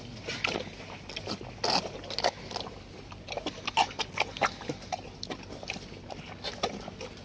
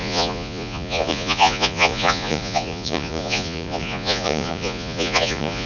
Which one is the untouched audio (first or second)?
first